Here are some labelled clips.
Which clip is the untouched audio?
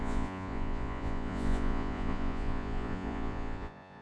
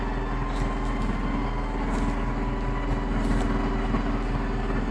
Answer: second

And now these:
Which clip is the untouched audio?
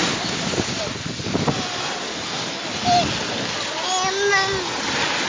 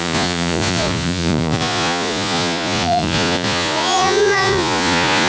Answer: first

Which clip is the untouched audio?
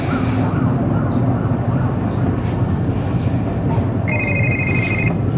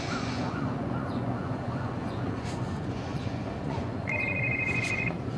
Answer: first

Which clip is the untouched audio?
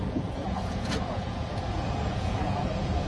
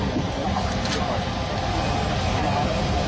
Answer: second